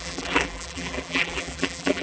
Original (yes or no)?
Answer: no